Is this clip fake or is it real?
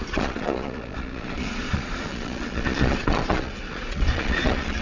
fake